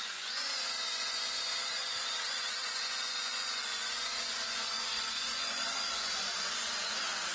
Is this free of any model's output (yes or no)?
no